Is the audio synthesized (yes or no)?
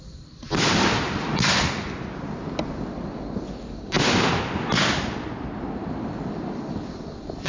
no